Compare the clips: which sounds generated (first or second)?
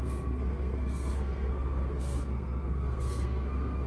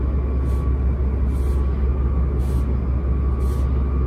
first